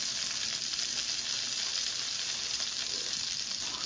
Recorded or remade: recorded